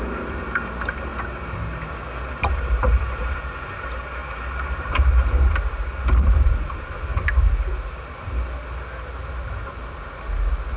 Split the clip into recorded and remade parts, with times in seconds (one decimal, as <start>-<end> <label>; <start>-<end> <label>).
0.0-1.1 remade; 1.1-2.3 recorded; 2.3-7.1 remade; 7.1-9.3 recorded; 9.3-9.8 remade; 9.8-10.8 recorded